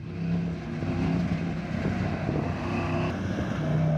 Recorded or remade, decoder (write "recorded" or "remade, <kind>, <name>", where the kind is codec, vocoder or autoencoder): recorded